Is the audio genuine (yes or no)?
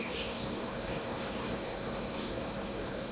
no